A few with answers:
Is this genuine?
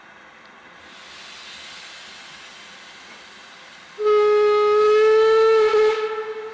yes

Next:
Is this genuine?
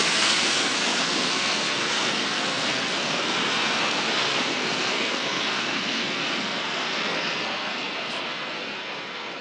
no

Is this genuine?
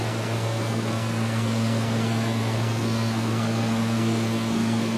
no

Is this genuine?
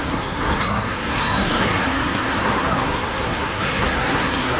no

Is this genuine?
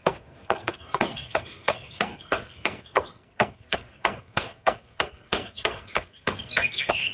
no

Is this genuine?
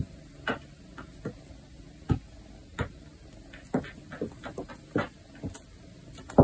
yes